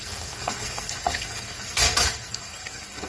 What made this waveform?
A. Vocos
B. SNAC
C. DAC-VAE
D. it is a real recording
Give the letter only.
B